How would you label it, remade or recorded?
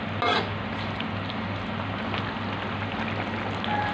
recorded